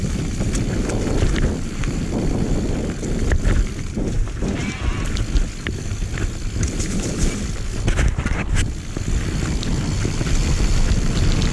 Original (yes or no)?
yes